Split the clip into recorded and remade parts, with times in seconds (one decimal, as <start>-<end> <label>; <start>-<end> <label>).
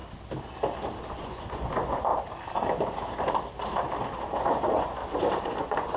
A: 0.0-1.2 recorded; 1.2-2.1 remade; 2.1-4.4 recorded; 4.4-5.0 remade; 5.0-5.6 recorded; 5.6-6.0 remade